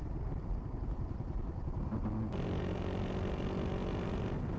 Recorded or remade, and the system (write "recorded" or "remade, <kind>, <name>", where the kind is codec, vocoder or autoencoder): recorded